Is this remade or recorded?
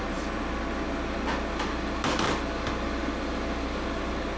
recorded